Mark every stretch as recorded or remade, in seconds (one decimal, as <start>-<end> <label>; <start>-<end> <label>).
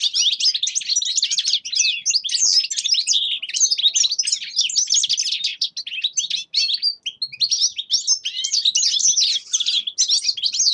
0.0-10.7 recorded